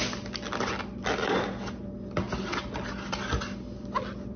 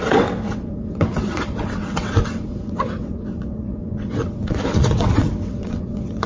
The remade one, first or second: second